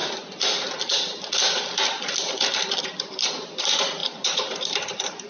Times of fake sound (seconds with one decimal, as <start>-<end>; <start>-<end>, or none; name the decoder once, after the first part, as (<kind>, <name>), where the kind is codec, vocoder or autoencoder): 2.8-5.3 (vocoder, BigVGAN v2)

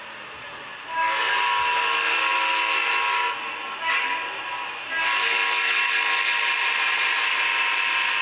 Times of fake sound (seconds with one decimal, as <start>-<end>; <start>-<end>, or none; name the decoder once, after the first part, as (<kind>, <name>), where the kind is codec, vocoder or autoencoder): none